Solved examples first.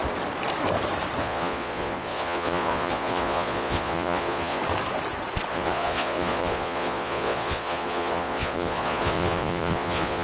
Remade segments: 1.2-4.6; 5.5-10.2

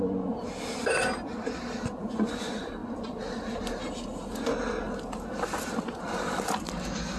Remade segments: none